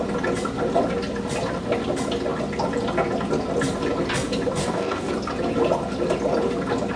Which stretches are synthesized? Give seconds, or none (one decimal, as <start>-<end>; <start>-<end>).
4.6-5.1